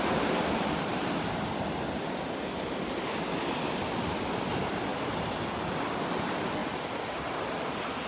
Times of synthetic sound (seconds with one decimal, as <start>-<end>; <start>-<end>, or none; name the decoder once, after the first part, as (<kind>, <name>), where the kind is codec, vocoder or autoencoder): 4.9-5.6 (vocoder, BigVGAN v2)